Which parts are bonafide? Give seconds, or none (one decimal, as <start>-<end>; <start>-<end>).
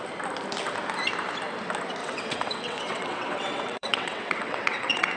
0.0-2.0